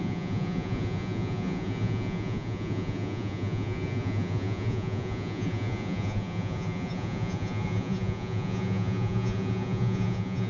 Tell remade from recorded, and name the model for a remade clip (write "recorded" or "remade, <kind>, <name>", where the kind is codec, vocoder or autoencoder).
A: remade, vocoder, Vocos